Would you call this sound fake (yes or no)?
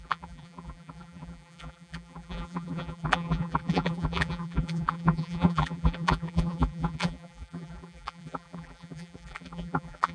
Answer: yes